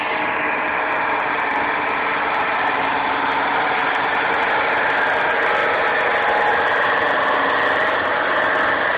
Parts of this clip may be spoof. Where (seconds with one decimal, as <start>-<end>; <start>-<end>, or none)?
none